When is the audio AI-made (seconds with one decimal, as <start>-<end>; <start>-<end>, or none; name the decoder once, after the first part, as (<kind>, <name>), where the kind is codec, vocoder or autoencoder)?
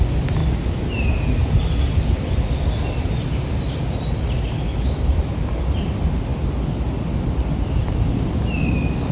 none